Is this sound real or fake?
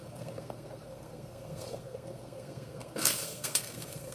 fake